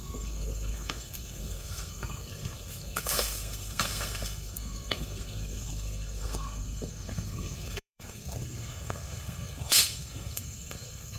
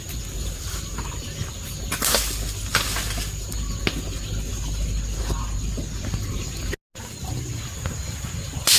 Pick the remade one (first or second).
first